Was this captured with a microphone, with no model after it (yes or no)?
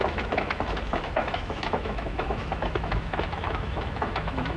no